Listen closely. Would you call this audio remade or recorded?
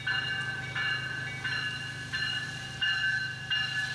recorded